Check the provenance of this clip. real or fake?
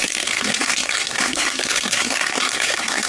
fake